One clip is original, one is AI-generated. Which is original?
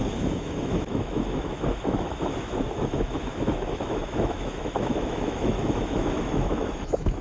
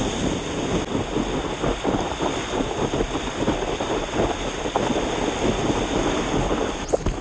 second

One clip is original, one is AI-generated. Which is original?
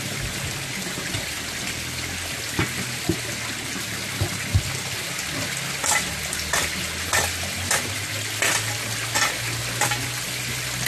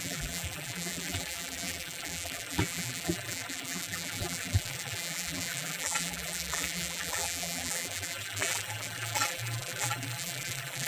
first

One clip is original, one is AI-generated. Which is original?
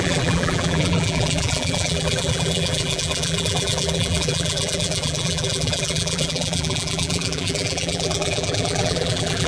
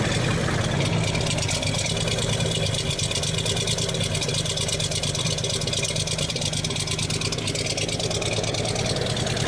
second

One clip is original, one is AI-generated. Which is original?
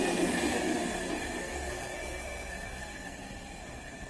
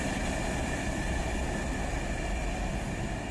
second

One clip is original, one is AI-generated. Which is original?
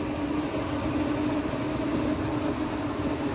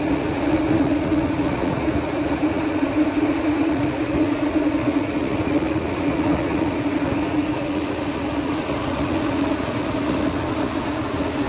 first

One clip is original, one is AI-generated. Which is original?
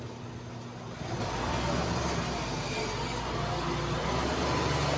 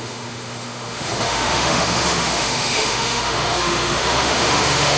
first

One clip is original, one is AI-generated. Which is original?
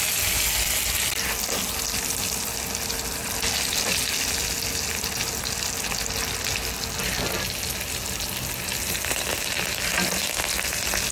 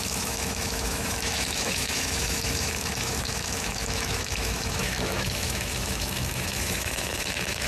first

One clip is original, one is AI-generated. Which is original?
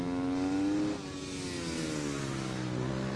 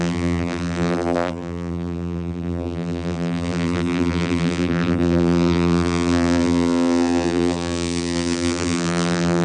first